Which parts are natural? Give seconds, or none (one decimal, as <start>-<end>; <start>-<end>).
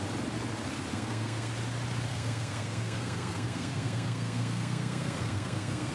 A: 0.0-0.9; 1.5-2.1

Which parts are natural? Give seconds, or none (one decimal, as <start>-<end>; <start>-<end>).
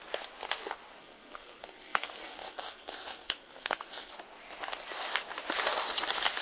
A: 0.0-1.0; 4.1-6.4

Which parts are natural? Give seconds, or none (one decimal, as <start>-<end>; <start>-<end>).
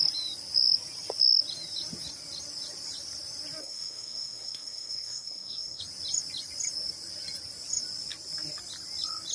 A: 0.0-3.6; 5.8-9.3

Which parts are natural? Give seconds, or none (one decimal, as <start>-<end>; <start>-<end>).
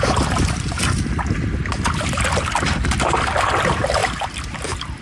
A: 0.0-5.0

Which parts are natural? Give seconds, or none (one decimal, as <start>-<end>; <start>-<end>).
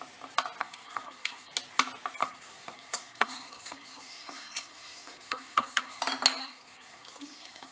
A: 0.0-0.6; 1.5-2.2; 6.0-6.4